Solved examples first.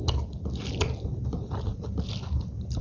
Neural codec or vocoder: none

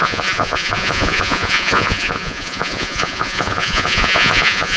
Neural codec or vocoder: vocoder, Vocos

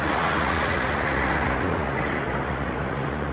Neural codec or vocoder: vocoder, Vocos